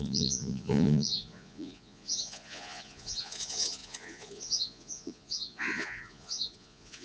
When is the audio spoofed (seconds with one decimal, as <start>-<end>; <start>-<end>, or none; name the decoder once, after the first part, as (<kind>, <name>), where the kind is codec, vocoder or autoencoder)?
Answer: 0.0-7.0 (vocoder, Vocos)

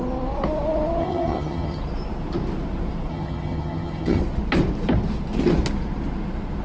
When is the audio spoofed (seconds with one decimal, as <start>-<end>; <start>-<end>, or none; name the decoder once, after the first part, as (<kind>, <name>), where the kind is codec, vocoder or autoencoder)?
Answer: 1.0-1.8 (vocoder, HiFi-GAN); 3.1-4.2

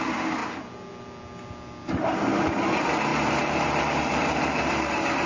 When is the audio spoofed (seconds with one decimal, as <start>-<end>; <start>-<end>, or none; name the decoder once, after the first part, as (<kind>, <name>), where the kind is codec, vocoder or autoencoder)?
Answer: 3.1-5.3 (vocoder, BigVGAN v2)

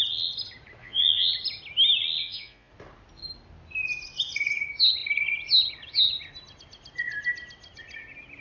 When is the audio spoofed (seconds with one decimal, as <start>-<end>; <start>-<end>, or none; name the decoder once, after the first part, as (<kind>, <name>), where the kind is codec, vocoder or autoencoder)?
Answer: 0.8-1.3 (vocoder, Vocos); 2.2-2.7

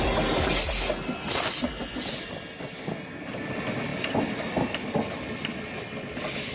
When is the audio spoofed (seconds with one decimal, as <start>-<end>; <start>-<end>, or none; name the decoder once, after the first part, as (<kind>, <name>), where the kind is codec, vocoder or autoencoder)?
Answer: none

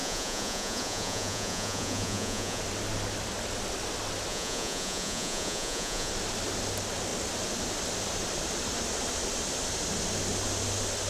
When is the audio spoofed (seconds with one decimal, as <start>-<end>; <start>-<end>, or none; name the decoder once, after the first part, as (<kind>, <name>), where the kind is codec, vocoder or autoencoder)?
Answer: 0.0-2.6 (vocoder, Vocos); 4.3-6.1

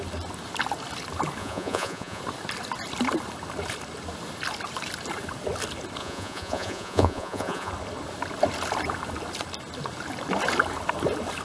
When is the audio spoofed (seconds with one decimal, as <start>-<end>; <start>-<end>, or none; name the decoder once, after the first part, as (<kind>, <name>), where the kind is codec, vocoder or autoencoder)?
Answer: 1.4-2.2 (vocoder, Vocos); 6.0-7.7